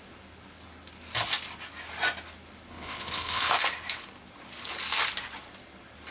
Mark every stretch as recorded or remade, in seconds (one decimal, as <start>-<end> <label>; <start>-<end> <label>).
0.0-2.7 recorded; 2.7-3.5 remade; 3.5-6.1 recorded